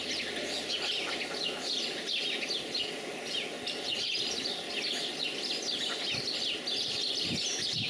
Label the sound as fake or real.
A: real